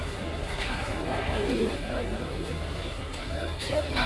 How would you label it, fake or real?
fake